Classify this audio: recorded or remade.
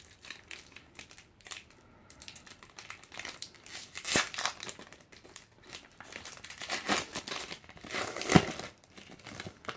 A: remade